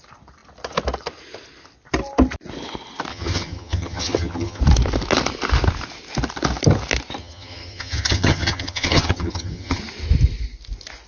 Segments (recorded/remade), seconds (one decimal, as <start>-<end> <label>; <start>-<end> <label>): 0.0-3.1 recorded; 3.1-4.6 remade; 4.6-7.2 recorded; 7.2-9.8 remade; 9.8-11.1 recorded